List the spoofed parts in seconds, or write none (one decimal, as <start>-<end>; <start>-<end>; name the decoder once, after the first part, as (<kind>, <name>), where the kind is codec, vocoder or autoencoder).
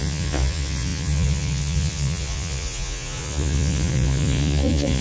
0.0-5.0 (vocoder, Vocos)